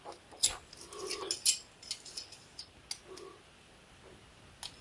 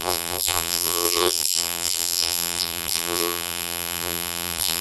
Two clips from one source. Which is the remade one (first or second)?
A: second